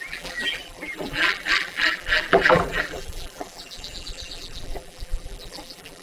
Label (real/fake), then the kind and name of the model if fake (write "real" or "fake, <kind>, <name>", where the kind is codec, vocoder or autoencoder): fake, vocoder, BigVGAN v2